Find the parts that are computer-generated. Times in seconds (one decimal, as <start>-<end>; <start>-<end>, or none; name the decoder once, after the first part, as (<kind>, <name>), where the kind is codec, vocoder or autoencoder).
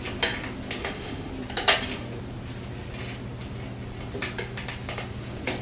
0.8-1.3 (autoencoder, DAC-VAE)